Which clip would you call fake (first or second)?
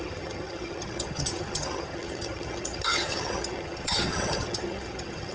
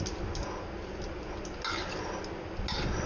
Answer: first